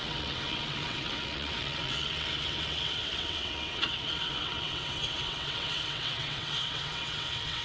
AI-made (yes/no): yes